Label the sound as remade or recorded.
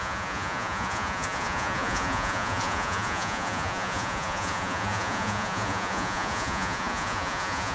remade